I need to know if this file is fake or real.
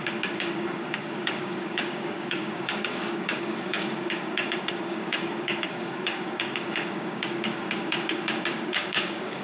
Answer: fake